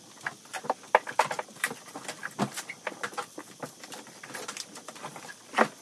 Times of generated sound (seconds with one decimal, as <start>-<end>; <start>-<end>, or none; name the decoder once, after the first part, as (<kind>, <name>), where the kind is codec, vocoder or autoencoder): 0.0-5.8 (vocoder, BigVGAN v2)